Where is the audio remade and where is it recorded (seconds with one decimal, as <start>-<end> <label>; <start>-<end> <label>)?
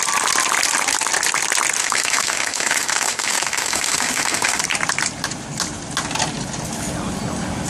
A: 0.0-1.8 recorded; 1.8-4.6 remade; 4.6-7.7 recorded